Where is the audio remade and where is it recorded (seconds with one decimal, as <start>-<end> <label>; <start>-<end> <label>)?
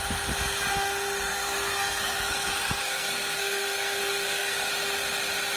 0.0-1.3 recorded; 1.3-4.7 remade; 4.7-5.6 recorded